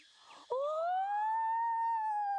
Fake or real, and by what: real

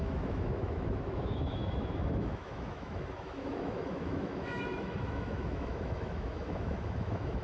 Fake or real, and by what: fake, autoencoder, DAC-VAE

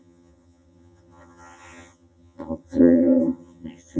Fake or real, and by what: fake, vocoder, HiFi-GAN